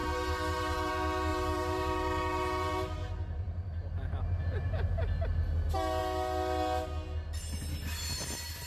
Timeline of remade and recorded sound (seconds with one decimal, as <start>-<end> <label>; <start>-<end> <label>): 0.0-0.9 remade; 0.9-1.3 recorded; 1.3-4.4 remade; 4.4-8.7 recorded